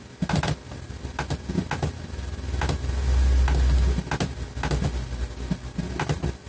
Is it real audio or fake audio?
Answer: real